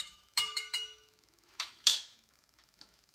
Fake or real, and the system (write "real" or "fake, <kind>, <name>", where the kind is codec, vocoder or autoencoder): fake, autoencoder, DAC-VAE